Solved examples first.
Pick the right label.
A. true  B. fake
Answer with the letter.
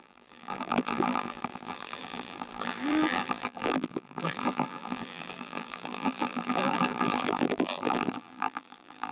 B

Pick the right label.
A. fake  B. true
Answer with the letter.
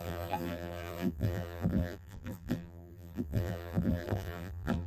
A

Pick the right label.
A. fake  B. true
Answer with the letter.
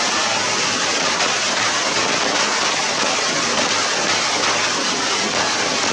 B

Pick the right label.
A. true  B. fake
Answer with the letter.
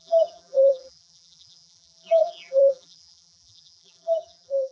B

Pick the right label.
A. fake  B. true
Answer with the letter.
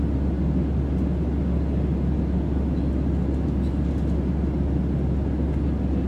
B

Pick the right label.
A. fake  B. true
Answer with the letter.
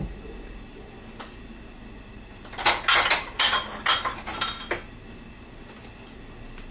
B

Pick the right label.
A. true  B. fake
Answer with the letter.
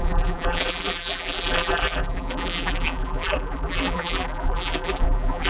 B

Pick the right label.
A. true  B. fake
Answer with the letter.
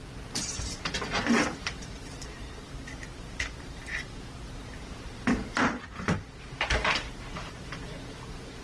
B